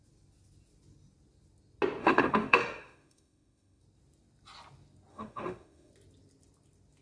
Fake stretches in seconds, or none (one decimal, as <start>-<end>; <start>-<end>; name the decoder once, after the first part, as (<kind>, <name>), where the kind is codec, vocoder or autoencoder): 2.0-3.8 (autoencoder, DAC-VAE); 5.1-5.9

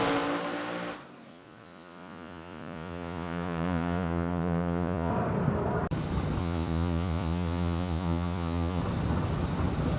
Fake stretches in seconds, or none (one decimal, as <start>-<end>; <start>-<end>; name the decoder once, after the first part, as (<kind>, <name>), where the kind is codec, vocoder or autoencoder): 1.3-5.1 (vocoder, Vocos); 6.4-8.8